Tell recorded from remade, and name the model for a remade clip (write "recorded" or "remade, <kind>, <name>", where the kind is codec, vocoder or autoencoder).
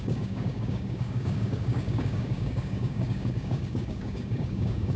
remade, codec, DAC